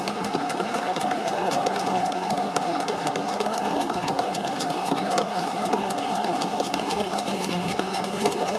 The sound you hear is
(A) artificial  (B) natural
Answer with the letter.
A